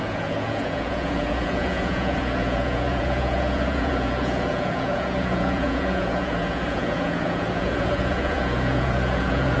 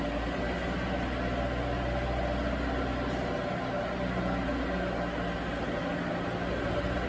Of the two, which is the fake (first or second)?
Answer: first